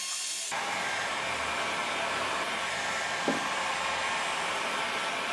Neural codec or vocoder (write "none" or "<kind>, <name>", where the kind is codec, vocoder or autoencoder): none